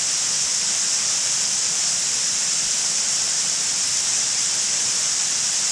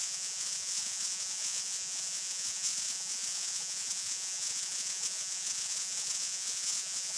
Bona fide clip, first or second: first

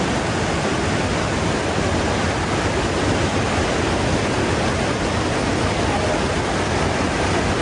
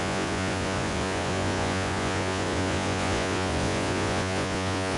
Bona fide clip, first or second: first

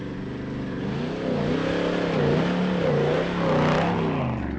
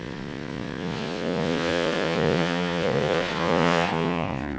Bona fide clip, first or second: first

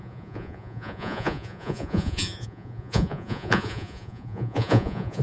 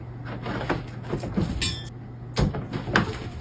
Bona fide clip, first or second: second